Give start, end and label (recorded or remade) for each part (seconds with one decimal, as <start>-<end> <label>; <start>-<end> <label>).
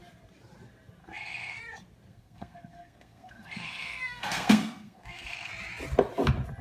0.0-1.0 recorded; 1.0-1.6 remade; 1.6-2.1 recorded; 2.1-5.5 remade; 5.5-6.6 recorded